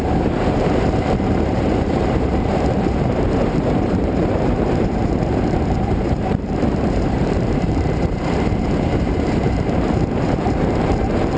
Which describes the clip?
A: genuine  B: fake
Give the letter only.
B